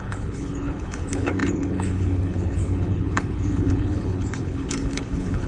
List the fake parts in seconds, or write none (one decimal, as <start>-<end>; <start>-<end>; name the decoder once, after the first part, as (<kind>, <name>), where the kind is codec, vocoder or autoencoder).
0.0-5.5 (codec, HILCodec)